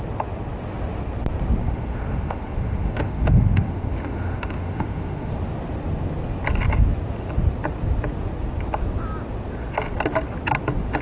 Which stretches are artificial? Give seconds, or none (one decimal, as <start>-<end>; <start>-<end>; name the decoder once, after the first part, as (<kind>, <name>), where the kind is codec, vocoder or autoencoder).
1.6-5.3 (autoencoder, DAC-VAE)